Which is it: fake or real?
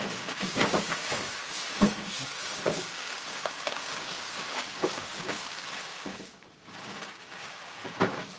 fake